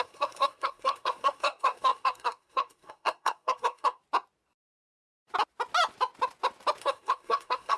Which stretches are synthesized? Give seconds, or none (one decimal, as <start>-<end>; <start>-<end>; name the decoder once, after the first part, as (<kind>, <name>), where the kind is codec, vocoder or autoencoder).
0.0-4.0 (codec, SNAC); 6.8-7.8